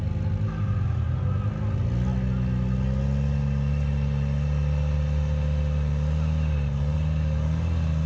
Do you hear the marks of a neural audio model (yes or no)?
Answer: no